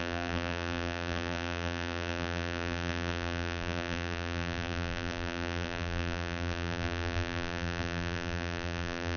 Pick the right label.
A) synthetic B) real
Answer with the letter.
A